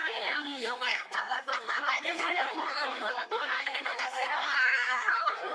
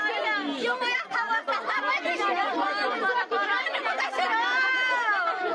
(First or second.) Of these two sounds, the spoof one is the first